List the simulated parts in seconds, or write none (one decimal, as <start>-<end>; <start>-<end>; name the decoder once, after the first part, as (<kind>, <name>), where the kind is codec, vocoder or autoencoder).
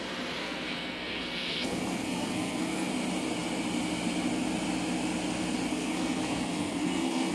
0.4-2.9 (codec, SNAC); 5.7-7.3